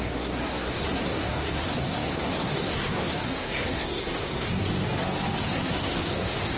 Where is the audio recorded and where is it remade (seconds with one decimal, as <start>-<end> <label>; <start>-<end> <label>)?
0.0-4.7 remade; 4.7-5.5 recorded; 5.5-6.6 remade